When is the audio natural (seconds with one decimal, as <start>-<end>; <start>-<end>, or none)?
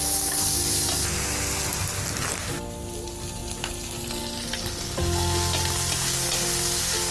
0.0-7.1